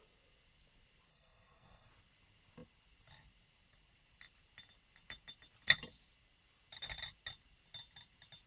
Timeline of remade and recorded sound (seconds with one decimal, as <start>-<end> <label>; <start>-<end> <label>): 0.0-1.1 recorded; 1.1-1.9 remade; 1.9-8.5 recorded